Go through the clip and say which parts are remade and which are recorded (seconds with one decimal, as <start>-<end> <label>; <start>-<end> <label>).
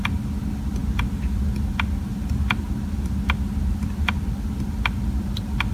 0.0-5.7 recorded